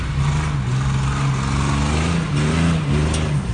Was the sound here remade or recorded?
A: recorded